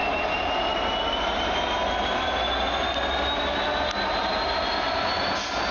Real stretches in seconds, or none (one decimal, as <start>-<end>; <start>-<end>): 0.0-5.7